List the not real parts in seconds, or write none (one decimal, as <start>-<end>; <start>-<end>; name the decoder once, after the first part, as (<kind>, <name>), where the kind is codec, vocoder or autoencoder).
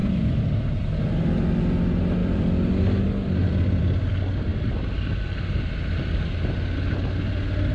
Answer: 0.0-1.0 (vocoder, BigVGAN v2); 2.2-2.7; 3.4-4.1